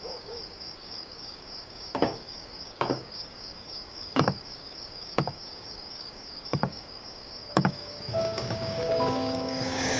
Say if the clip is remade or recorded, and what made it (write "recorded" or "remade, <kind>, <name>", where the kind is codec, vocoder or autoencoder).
remade, codec, DAC